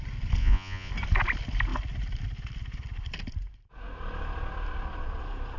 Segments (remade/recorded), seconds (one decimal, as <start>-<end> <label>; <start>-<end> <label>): 0.0-0.4 recorded; 0.4-0.9 remade; 0.9-5.6 recorded